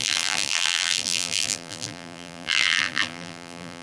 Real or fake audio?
fake